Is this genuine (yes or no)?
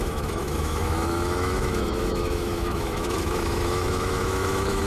no